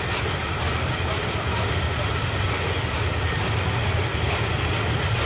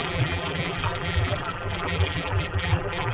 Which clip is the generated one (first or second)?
second